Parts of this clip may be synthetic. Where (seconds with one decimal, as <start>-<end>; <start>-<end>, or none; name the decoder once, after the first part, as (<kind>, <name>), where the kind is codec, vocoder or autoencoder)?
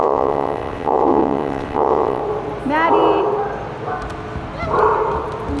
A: 0.0-2.2 (vocoder, WaveNeXt)